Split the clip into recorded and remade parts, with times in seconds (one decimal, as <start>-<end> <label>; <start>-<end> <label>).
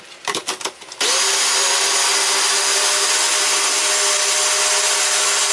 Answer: 0.0-5.5 recorded